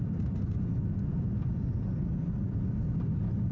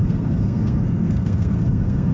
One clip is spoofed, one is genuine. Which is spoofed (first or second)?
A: second